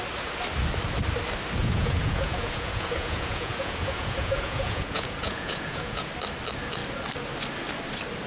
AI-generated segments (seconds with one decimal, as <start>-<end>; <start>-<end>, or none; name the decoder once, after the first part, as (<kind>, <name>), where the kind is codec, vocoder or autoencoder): 1.6-6.1 (vocoder, Vocos)